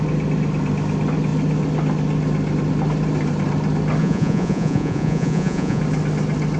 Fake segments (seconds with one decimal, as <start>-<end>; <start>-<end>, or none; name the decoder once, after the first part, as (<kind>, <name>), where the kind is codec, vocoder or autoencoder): 4.0-5.8 (vocoder, Vocos)